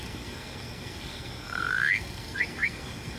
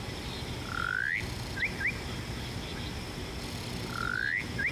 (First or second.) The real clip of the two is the second